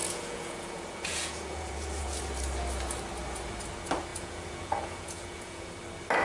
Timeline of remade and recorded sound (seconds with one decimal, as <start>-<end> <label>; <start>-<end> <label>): 0.0-2.2 remade; 2.2-4.1 recorded; 4.1-5.7 remade; 5.7-6.2 recorded